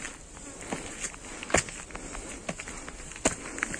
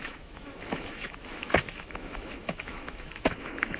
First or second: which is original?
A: first